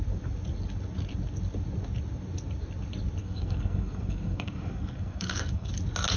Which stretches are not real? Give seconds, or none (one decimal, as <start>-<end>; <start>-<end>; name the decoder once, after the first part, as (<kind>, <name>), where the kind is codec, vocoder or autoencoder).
3.2-5.7 (codec, SNAC)